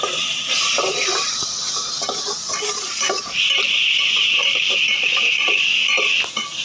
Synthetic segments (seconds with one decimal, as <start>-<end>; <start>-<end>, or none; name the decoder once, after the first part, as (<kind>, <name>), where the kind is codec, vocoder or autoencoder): none